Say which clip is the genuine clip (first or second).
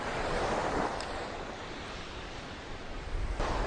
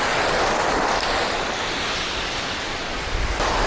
second